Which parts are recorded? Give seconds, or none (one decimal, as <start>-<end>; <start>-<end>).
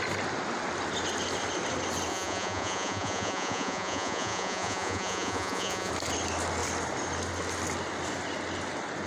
0.0-2.1; 5.9-9.1